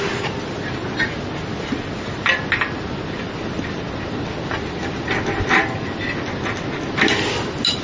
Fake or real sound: real